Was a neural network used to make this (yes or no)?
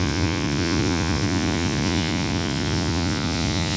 yes